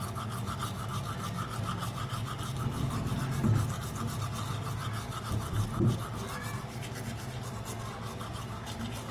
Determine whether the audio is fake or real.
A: real